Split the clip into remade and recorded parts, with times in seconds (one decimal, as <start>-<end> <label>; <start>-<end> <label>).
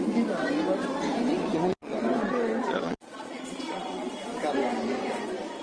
0.0-1.4 recorded; 1.4-4.1 remade; 4.1-5.6 recorded